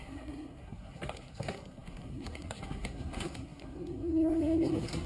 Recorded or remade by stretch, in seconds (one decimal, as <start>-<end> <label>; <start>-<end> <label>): 0.0-5.1 remade